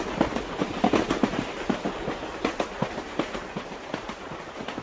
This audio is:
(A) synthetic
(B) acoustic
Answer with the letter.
B